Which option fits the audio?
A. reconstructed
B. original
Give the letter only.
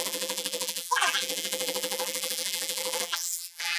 A